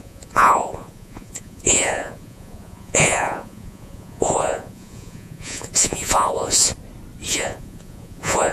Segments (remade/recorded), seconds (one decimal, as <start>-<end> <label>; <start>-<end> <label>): 0.0-6.7 remade; 6.7-7.3 recorded; 7.3-8.5 remade